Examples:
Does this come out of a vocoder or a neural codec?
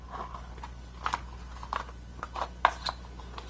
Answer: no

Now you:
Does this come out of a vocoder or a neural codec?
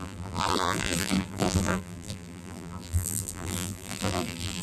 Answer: yes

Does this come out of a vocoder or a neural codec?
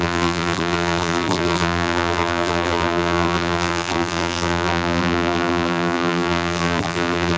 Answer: yes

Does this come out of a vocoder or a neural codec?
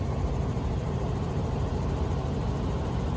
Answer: yes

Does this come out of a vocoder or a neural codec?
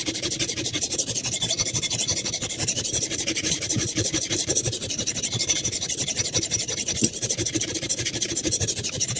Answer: yes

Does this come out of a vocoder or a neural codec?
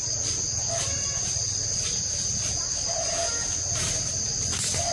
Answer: no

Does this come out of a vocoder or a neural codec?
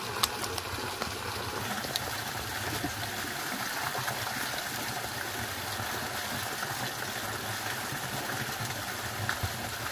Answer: no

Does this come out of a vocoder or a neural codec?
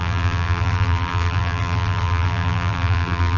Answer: yes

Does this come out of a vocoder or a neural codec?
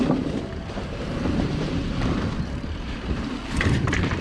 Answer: yes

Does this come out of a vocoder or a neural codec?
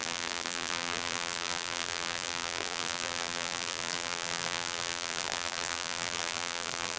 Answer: yes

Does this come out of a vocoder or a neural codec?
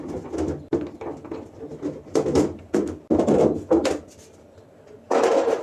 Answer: no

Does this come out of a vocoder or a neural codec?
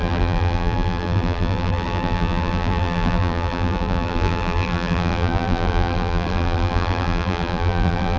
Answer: yes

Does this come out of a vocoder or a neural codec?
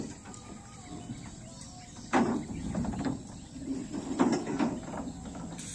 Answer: yes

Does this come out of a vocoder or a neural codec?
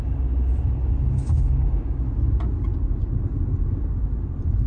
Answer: no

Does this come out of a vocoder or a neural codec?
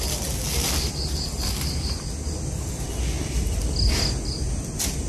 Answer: no